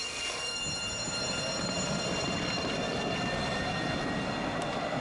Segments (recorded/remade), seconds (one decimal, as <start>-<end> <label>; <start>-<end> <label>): 0.0-0.6 remade; 0.6-5.0 recorded